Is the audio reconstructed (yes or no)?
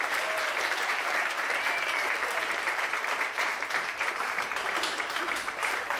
yes